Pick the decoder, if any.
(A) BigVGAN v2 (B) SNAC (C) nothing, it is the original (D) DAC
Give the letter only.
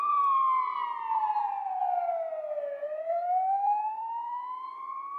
A